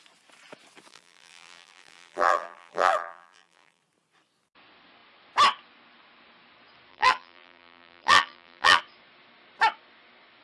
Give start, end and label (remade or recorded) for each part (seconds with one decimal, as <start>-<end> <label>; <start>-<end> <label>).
0.0-0.9 recorded; 0.9-3.8 remade; 3.8-6.9 recorded; 6.9-8.8 remade; 8.8-10.4 recorded